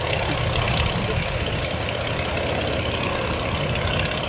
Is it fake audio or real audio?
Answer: real